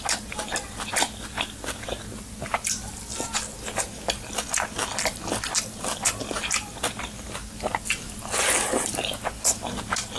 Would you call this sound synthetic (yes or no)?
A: no